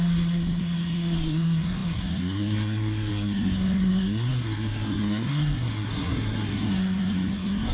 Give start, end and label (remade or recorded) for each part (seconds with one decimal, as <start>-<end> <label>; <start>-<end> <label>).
0.0-7.7 remade